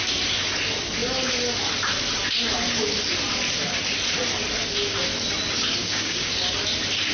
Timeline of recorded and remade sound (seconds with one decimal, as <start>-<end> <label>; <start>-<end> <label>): 0.0-5.8 recorded; 5.8-6.3 remade; 6.3-7.1 recorded